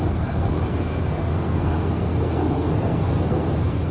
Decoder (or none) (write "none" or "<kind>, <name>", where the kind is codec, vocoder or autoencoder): codec, SNAC